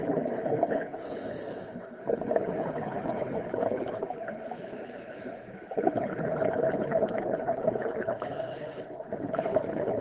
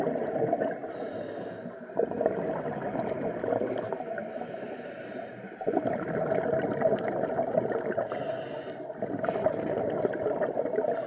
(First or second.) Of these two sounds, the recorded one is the second